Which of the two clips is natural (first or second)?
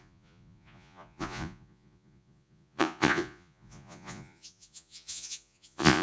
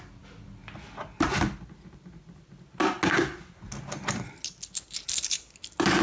second